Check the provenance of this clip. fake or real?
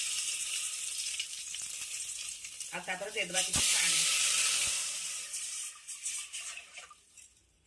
fake